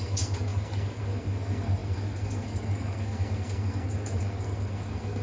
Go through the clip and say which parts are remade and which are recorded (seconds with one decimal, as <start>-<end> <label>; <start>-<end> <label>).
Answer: 0.0-5.2 remade